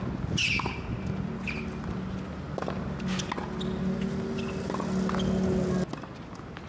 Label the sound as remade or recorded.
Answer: recorded